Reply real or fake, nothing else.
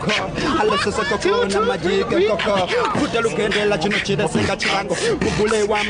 real